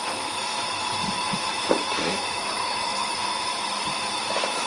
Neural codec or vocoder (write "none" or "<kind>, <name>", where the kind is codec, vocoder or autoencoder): autoencoder, DAC-VAE